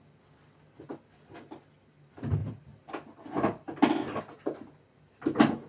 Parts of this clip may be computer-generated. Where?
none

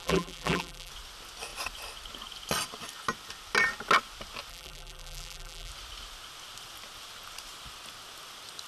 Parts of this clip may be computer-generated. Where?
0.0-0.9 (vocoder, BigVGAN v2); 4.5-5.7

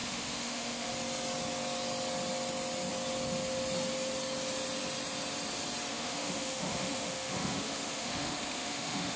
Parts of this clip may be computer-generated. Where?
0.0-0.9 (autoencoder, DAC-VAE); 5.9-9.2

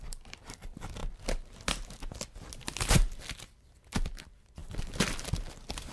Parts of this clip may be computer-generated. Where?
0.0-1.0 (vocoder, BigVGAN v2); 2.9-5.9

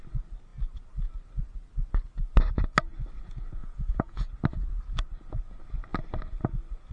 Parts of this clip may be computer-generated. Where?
3.6-4.3 (vocoder, Vocos)

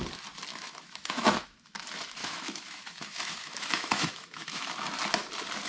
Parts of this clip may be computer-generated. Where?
0.5-1.8 (autoencoder, DAC-VAE); 2.2-4.7

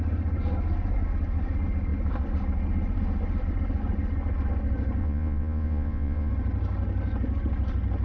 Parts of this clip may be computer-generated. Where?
5.0-6.3 (vocoder, Vocos)